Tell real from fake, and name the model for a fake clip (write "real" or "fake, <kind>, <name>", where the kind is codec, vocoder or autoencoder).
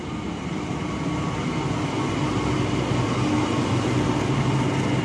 real